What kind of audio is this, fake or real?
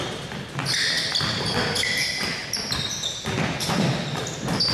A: real